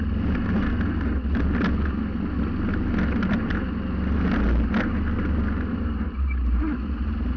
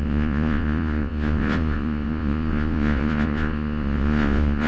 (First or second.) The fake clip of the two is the second